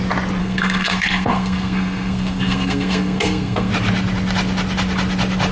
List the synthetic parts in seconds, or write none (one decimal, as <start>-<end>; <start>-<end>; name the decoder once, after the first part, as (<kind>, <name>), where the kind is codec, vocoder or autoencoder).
0.4-3.7 (codec, SNAC)